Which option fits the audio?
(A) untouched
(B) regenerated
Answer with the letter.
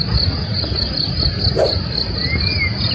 A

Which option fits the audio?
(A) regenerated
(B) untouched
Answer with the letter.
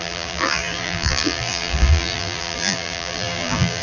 A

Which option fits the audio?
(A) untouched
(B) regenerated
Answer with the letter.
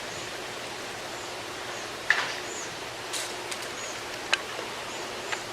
B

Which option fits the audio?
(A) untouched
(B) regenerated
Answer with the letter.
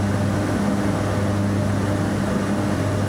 A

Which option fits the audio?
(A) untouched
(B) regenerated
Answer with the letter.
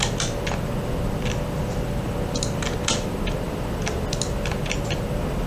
A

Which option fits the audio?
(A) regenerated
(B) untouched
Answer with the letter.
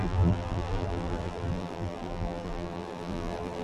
A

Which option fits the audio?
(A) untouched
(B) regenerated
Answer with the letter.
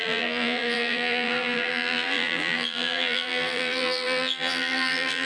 B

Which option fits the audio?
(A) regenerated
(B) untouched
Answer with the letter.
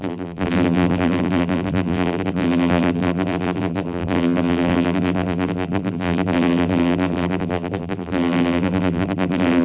A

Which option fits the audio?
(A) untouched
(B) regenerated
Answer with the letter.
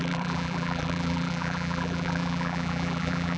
B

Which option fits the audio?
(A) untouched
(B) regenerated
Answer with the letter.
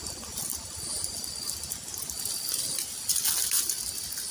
A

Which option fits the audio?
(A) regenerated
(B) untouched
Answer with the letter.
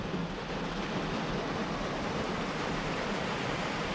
B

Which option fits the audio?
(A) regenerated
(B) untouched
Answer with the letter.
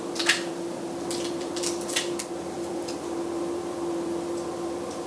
A